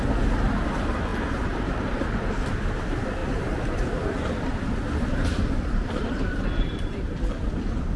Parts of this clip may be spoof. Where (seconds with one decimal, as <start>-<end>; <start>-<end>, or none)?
1.1-2.4; 3.2-3.9; 6.0-7.5